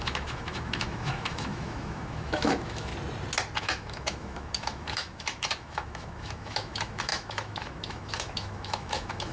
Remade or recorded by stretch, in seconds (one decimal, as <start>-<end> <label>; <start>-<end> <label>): 0.0-2.9 remade; 2.9-3.6 recorded; 3.6-9.3 remade